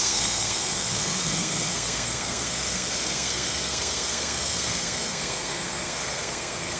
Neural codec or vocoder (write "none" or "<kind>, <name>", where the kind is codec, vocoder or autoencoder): codec, SNAC